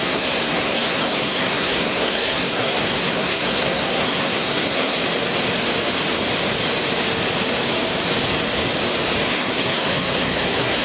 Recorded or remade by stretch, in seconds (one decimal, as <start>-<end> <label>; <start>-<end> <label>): 0.0-5.0 remade; 5.0-9.3 recorded; 9.3-10.8 remade